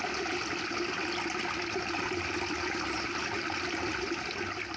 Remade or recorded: recorded